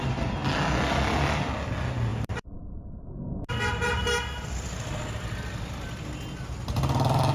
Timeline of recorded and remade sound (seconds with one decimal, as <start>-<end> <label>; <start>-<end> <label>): 0.0-2.1 recorded; 2.1-3.5 remade; 3.5-7.3 recorded